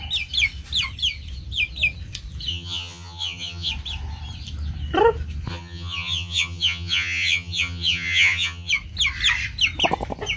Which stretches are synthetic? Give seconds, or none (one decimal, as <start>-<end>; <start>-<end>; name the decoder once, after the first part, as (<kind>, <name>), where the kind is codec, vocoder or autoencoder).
2.5-3.7 (vocoder, HiFi-GAN); 5.5-8.7